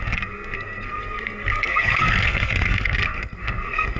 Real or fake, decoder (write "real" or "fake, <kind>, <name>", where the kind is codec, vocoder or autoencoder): fake, codec, SNAC